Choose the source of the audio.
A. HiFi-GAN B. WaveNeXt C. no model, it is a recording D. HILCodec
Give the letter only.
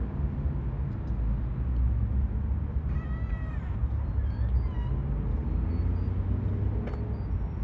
C